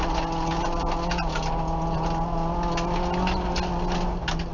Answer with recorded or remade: recorded